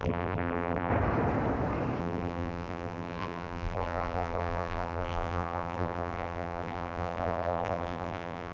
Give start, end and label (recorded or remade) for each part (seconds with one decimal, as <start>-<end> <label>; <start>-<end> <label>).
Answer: 0.0-0.9 remade; 0.9-2.0 recorded; 2.0-8.5 remade